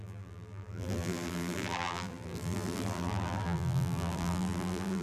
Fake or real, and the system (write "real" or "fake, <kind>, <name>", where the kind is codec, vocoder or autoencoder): fake, vocoder, BigVGAN v2